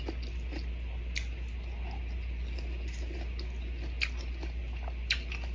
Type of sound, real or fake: real